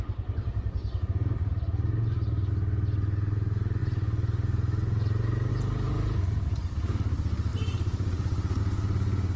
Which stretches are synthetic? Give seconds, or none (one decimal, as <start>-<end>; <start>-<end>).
7.5-8.6